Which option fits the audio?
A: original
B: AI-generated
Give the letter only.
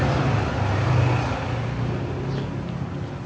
A